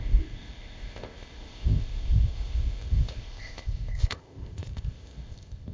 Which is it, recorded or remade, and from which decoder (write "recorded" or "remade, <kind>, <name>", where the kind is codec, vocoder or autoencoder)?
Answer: remade, codec, ZipCodec